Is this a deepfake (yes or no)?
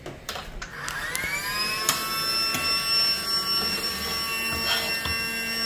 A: no